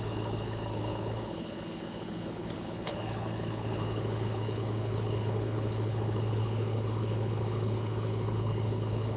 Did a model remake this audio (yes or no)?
yes